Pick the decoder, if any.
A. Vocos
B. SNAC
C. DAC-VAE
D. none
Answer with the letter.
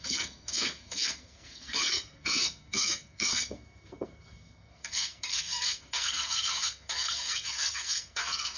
B